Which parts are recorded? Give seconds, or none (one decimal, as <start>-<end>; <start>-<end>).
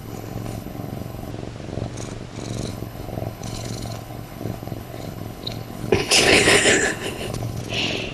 1.3-2.7; 7.6-8.1